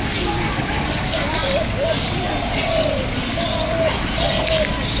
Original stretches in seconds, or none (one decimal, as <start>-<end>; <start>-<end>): 0.0-5.0